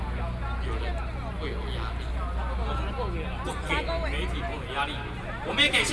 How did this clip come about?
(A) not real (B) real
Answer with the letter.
B